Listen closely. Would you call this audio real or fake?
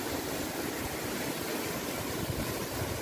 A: real